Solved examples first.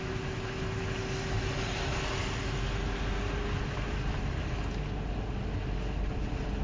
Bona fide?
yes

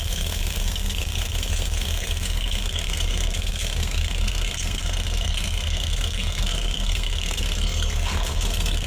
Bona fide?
no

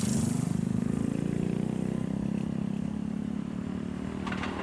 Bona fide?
yes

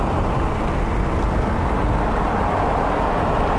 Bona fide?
yes